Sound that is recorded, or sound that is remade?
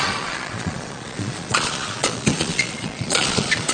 remade